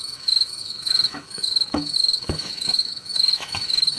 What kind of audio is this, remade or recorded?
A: remade